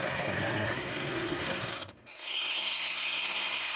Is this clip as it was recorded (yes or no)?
no